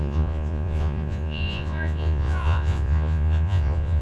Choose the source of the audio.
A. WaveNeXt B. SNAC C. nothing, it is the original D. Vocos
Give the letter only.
D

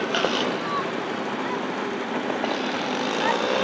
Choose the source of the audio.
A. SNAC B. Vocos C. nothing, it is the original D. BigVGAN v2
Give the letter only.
C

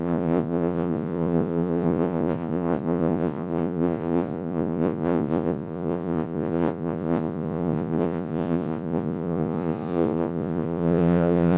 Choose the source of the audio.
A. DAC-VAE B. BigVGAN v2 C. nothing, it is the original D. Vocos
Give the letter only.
D